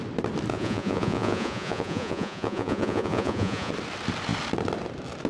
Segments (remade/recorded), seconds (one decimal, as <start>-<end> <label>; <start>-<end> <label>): 0.0-0.5 recorded; 0.5-3.7 remade; 3.7-5.3 recorded